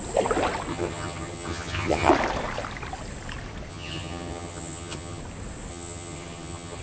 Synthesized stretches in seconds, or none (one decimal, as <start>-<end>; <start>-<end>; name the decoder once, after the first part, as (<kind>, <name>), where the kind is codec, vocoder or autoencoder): 0.7-2.1 (vocoder, HiFi-GAN); 3.7-5.2; 5.7-6.8